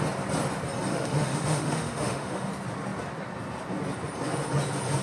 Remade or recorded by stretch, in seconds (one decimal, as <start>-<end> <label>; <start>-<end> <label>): 0.0-0.9 recorded; 0.9-2.5 remade; 2.5-5.0 recorded